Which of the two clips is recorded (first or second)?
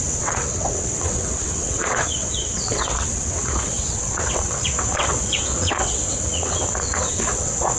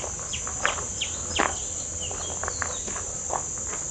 second